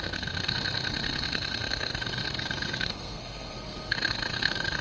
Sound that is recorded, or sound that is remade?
remade